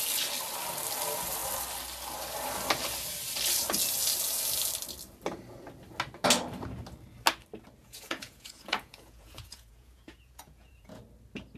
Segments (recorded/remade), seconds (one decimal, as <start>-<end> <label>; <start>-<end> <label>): 0.0-7.8 recorded; 7.8-11.0 remade; 11.0-11.6 recorded

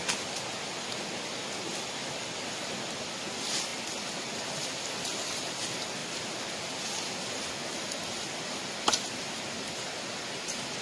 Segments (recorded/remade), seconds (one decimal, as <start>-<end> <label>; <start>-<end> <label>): 0.0-10.8 recorded

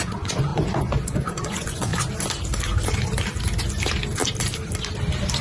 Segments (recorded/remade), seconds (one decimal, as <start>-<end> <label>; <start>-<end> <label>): 0.0-1.9 remade; 1.9-5.4 recorded

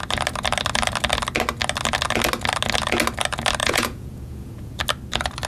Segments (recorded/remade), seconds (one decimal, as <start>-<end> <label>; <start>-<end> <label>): 0.0-3.6 recorded; 3.6-4.8 remade; 4.8-5.5 recorded